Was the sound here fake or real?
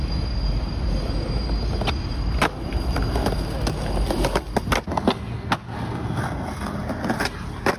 real